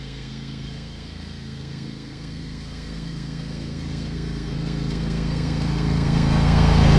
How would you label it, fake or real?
fake